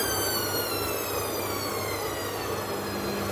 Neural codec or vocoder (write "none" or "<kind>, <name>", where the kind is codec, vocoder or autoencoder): none